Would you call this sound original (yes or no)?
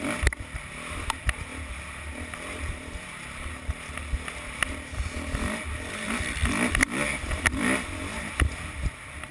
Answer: yes